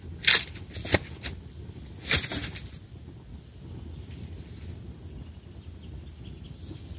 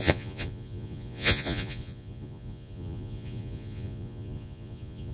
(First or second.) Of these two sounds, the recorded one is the first